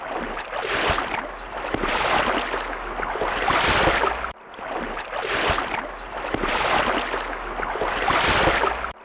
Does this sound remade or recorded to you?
recorded